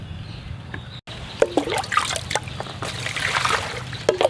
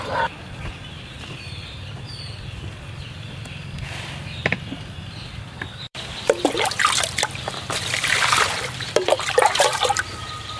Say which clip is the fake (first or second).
second